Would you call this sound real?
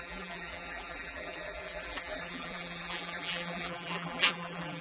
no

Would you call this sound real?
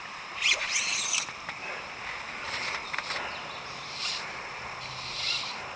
yes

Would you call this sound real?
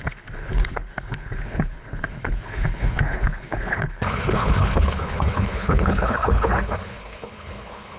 no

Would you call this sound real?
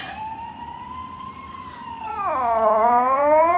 no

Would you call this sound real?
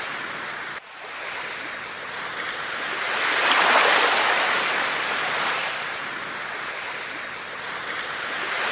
yes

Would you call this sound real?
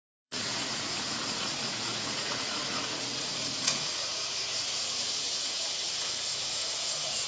no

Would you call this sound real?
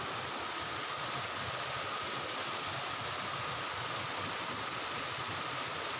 yes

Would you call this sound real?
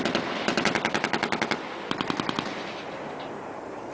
yes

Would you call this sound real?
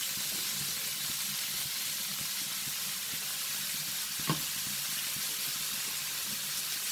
yes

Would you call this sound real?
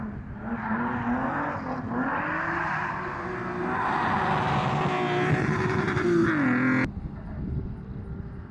yes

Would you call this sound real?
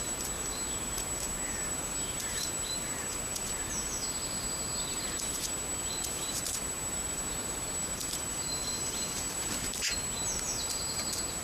no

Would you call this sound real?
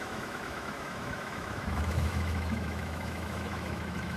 no